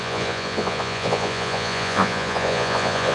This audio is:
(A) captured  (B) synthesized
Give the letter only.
B